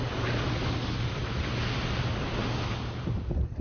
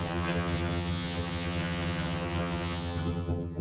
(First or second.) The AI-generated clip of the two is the second